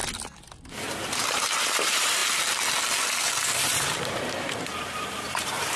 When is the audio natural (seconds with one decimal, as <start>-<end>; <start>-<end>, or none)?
0.0-0.7; 2.2-3.8